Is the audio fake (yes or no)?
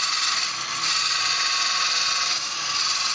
no